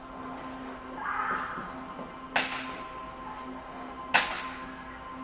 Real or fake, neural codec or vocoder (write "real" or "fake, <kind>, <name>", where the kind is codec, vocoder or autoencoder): real